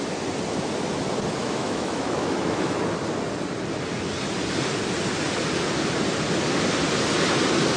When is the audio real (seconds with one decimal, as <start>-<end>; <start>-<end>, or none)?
0.0-1.4; 2.8-7.8